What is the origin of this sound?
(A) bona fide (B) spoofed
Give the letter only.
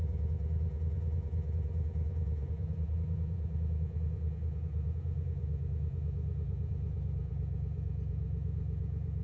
B